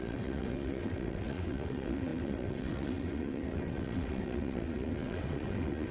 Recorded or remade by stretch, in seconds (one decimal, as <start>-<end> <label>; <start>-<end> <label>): 0.0-5.9 remade